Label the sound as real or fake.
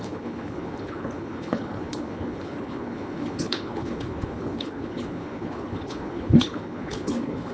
fake